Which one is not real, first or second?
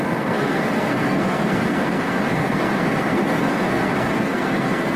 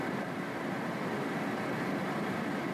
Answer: first